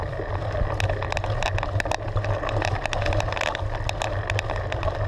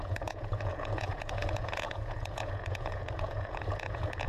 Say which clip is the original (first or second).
first